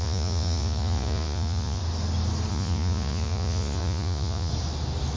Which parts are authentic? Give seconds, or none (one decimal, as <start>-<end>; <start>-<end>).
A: 1.8-2.5; 4.5-5.2